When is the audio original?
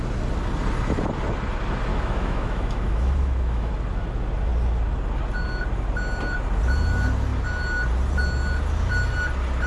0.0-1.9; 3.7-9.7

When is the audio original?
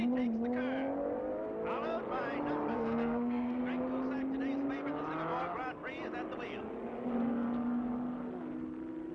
0.0-2.7; 3.6-9.1